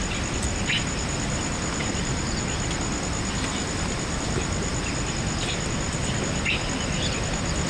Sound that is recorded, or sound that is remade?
recorded